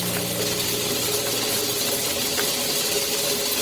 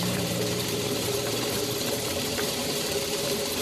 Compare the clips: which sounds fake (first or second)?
second